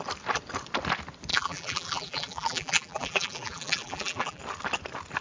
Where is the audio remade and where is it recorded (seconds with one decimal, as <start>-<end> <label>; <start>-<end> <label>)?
0.0-1.3 recorded; 1.3-4.4 remade; 4.4-5.2 recorded